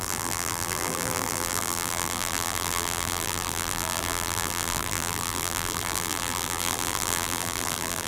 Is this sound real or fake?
fake